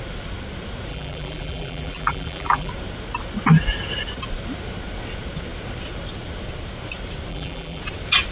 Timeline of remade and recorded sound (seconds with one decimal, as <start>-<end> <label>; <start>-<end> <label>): 0.0-0.9 recorded; 0.9-2.7 remade; 2.7-7.3 recorded; 7.3-7.8 remade; 7.8-8.3 recorded